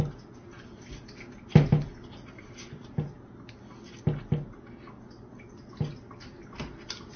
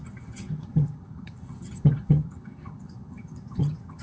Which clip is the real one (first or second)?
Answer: first